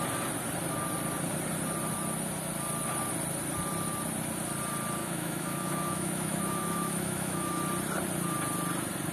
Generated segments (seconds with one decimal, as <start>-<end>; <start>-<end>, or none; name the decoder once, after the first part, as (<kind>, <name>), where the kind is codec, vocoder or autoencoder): 5.0-7.6 (autoencoder, DAC-VAE)